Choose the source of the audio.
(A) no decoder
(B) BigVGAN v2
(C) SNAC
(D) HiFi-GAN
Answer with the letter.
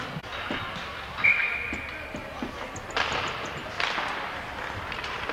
A